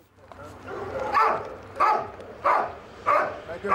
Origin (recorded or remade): remade